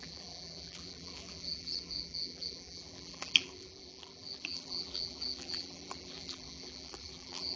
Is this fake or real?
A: fake